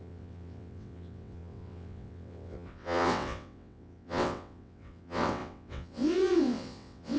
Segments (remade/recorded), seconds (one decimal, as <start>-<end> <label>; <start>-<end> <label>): 0.0-7.2 remade